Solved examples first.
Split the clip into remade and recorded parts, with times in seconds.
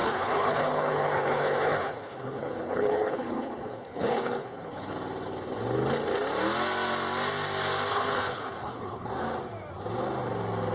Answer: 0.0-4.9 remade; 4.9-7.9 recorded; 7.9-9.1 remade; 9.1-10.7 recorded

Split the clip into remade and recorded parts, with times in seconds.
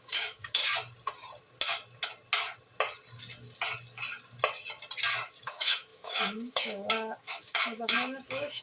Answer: 0.0-0.6 remade; 0.6-5.4 recorded; 5.4-8.6 remade